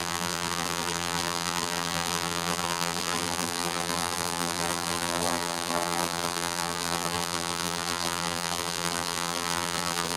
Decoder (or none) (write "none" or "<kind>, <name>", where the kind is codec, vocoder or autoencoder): vocoder, BigVGAN v2